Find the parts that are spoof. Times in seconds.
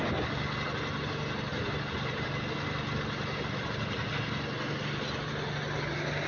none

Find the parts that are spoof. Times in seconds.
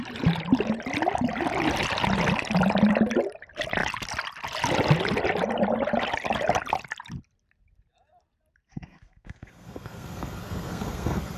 8.7-11.4 (codec, SNAC)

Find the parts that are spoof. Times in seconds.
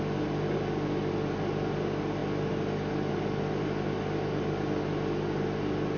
none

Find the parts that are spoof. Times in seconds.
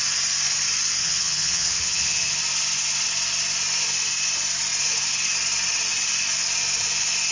1.0-2.4 (vocoder, HiFi-GAN)